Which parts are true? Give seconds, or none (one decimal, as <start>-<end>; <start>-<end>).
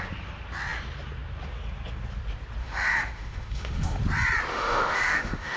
0.0-2.6; 4.0-4.5